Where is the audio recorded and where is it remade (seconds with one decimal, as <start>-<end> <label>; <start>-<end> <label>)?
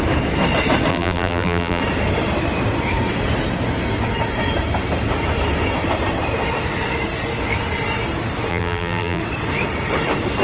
0.0-0.9 recorded; 0.9-1.8 remade; 1.8-8.5 recorded; 8.5-9.2 remade; 9.2-10.4 recorded